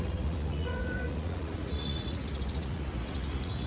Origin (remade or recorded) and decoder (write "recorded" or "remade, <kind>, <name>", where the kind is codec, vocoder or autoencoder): remade, vocoder, Vocos